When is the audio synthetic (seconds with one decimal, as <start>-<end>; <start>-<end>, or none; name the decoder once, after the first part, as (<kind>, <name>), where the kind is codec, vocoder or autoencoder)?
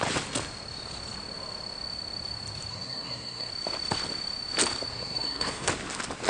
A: 2.7-3.5 (codec, SNAC); 4.9-5.7